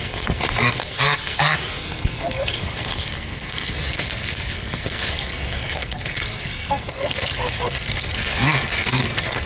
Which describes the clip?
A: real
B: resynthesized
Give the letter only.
B